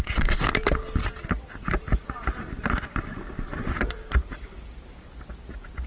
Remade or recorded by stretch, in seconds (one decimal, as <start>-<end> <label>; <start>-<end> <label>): 0.0-5.9 recorded